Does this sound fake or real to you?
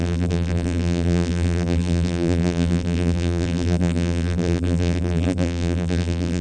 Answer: fake